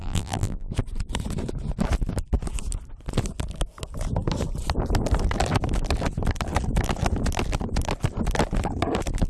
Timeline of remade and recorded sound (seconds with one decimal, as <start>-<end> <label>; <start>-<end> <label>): 0.0-0.7 remade; 0.7-9.3 recorded